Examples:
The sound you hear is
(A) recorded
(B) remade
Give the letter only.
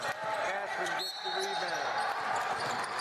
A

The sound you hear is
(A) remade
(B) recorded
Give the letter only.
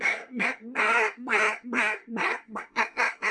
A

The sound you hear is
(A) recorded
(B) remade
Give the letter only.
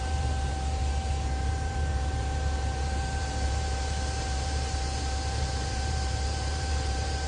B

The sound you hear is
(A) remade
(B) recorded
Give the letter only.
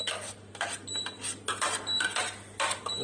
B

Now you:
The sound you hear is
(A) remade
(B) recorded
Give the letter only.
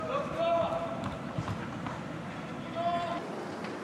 B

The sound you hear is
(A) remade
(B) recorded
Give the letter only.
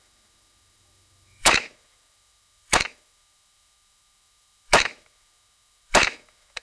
A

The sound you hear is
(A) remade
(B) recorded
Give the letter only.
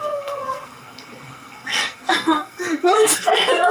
A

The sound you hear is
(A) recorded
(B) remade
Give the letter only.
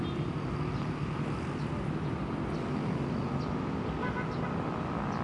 A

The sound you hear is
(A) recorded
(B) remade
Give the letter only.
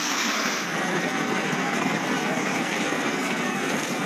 B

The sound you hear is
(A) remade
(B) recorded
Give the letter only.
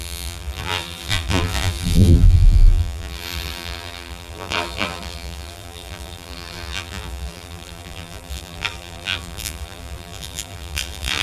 A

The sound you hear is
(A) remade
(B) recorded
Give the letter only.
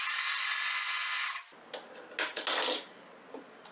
B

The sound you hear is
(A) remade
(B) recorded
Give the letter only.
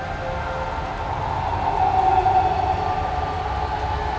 B